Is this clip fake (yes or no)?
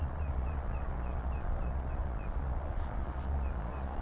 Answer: yes